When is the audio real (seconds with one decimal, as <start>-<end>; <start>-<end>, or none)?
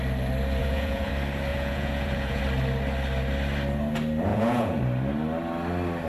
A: 0.0-0.6; 1.1-1.5; 2.4-4.3; 4.8-6.1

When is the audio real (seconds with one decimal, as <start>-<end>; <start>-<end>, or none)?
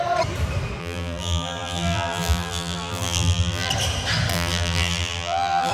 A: 0.0-0.8; 3.7-4.3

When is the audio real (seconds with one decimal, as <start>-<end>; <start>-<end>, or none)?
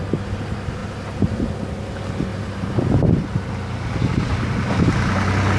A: 0.0-5.6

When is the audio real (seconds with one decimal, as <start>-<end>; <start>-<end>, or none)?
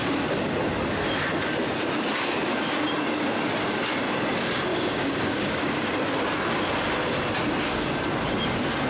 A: 0.0-4.7; 5.9-8.9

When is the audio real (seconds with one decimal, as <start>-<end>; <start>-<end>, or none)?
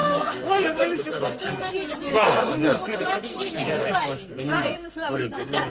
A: 1.7-2.1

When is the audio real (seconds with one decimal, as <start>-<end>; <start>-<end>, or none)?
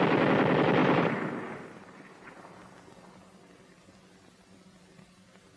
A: 0.0-0.8; 2.3-5.6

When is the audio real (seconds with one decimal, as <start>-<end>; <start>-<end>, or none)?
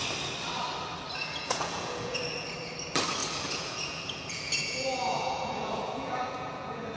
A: 0.0-1.2; 2.2-3.2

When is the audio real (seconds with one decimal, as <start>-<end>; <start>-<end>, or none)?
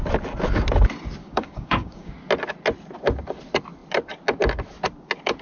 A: 0.0-1.2; 2.1-5.4